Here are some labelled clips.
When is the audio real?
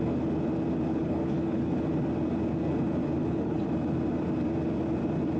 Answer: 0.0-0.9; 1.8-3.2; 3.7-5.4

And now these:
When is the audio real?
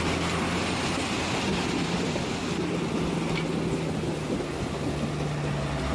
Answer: 0.0-1.5; 2.9-5.9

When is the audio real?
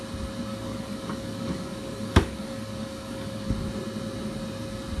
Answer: 0.0-0.5; 3.5-5.0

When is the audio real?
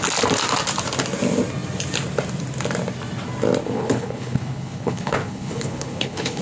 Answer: 0.0-3.6